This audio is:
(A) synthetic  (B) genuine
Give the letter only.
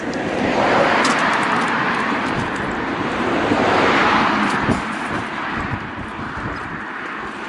A